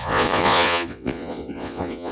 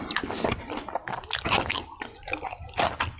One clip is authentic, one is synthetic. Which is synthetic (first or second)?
first